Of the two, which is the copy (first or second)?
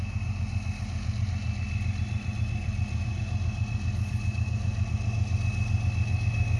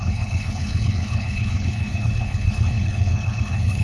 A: second